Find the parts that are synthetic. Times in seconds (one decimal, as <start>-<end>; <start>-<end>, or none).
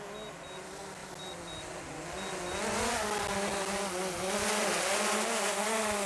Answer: none